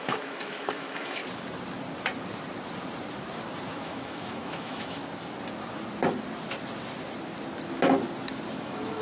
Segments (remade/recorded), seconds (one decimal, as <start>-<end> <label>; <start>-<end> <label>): 0.0-1.2 remade; 1.2-3.7 recorded; 3.7-5.0 remade; 5.0-8.5 recorded; 8.5-9.0 remade